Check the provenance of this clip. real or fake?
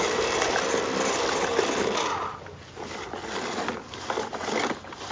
real